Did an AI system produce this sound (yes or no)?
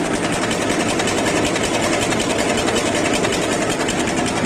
no